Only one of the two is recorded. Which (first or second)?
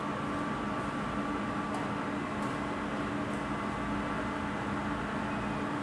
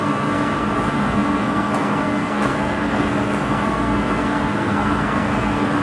first